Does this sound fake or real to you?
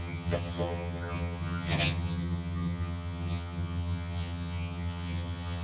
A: fake